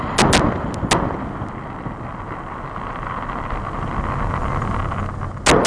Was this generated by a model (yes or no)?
no